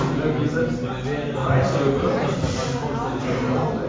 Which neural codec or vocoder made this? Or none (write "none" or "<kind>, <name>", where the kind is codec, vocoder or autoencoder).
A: none